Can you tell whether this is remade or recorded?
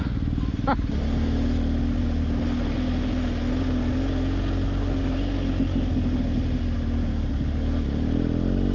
recorded